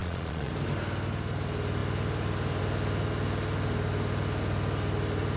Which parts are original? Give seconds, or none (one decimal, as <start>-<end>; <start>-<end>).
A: 0.5-5.4